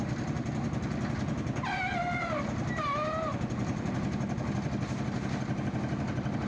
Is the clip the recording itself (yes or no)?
yes